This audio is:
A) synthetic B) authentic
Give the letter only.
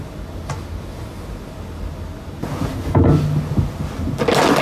B